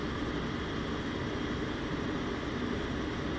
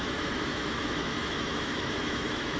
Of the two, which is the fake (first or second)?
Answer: second